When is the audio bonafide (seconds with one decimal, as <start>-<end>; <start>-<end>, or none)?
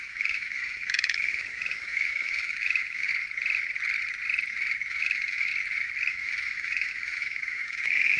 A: 3.1-4.9; 5.5-6.1